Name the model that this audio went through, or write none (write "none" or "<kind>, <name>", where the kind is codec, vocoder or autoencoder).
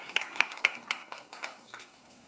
codec, SNAC